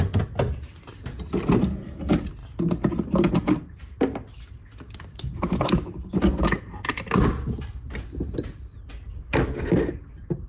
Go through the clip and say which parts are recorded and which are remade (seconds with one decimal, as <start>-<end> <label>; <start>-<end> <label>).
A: 0.0-10.5 recorded